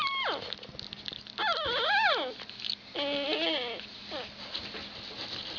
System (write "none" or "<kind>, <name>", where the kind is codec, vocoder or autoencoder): none